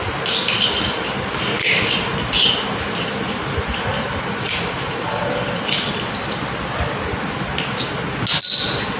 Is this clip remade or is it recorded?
recorded